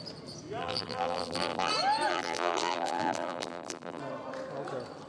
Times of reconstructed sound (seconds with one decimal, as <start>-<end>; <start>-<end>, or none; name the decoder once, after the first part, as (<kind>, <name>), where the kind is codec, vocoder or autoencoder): 0.6-1.7 (vocoder, BigVGAN v2); 2.1-4.0